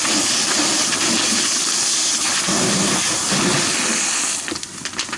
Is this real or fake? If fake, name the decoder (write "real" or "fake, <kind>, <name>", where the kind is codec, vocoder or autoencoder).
real